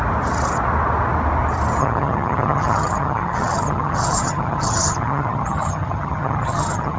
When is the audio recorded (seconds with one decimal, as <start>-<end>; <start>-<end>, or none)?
0.0-1.8